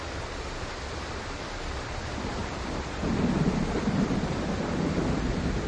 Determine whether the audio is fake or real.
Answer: real